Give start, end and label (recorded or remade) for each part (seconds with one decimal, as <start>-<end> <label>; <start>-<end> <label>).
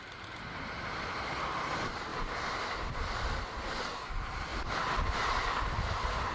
0.0-2.1 recorded; 2.1-2.9 remade; 2.9-4.5 recorded; 4.5-5.0 remade; 5.0-6.3 recorded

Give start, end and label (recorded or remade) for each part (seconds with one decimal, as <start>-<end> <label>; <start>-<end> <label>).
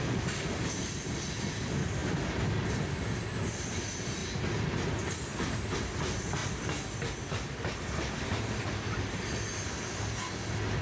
0.0-4.2 remade; 4.2-5.8 recorded; 5.8-6.4 remade; 6.4-7.2 recorded; 7.2-10.8 remade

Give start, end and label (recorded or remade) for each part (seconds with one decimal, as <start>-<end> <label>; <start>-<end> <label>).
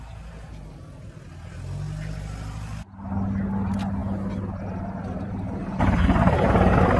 0.0-7.0 recorded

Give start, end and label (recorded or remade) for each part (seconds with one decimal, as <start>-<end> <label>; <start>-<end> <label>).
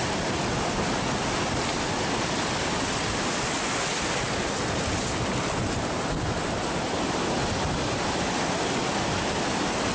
0.0-3.9 recorded; 3.9-6.6 remade; 6.6-9.9 recorded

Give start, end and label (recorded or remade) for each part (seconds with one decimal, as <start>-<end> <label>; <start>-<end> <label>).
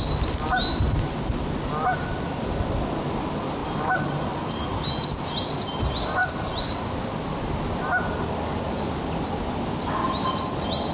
0.0-3.6 recorded; 3.6-4.9 remade; 4.9-10.9 recorded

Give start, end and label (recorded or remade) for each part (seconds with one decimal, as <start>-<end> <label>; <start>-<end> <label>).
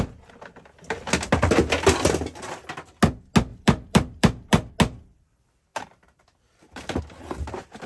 0.0-3.5 recorded; 3.5-4.7 remade; 4.7-5.7 recorded; 5.7-7.0 remade; 7.0-7.9 recorded